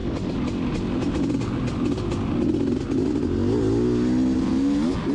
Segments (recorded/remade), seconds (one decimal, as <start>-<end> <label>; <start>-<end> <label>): 0.0-5.1 recorded